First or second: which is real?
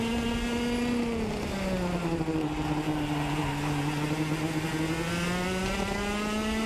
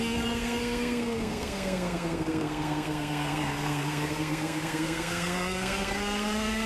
first